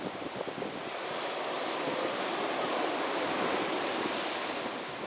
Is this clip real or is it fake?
real